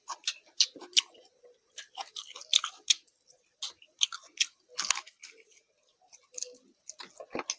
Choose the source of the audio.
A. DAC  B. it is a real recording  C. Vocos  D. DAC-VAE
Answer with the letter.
B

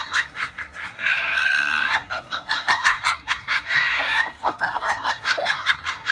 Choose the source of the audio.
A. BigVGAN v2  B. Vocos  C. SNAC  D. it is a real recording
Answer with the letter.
C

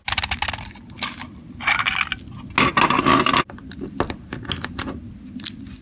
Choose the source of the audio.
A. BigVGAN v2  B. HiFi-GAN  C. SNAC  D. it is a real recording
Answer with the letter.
D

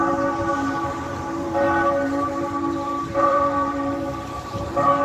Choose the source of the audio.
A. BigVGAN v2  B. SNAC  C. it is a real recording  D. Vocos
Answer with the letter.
A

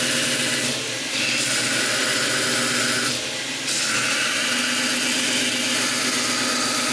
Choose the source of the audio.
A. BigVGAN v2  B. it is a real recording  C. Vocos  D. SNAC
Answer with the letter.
B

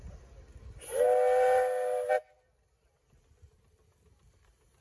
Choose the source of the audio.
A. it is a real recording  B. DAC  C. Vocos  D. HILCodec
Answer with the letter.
A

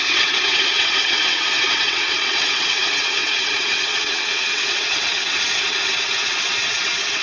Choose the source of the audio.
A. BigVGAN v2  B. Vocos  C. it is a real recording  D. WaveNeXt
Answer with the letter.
D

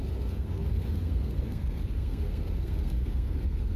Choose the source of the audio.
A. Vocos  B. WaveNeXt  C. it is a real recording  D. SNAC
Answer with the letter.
D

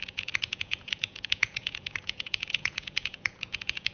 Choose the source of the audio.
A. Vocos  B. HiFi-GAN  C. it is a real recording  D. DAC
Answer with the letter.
A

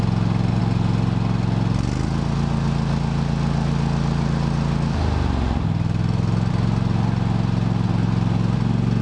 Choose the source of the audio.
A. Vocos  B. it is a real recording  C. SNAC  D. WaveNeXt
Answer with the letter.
B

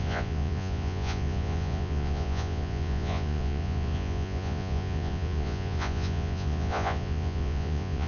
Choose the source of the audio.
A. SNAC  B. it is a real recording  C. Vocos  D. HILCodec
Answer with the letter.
C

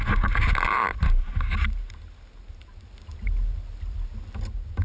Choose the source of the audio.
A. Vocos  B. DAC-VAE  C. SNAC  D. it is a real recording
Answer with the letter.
D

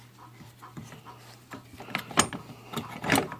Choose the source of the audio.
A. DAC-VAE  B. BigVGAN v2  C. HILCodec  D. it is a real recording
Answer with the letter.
D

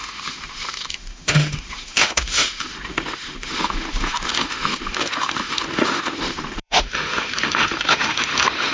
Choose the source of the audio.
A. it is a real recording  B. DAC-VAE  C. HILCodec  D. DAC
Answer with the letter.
B